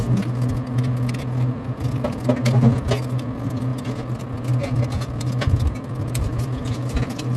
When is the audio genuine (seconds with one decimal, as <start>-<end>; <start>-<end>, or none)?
0.0-7.4